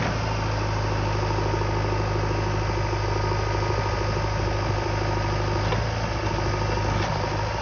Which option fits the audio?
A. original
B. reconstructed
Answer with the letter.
A